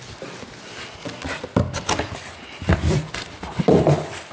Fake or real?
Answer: real